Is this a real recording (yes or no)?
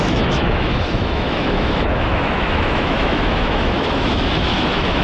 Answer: no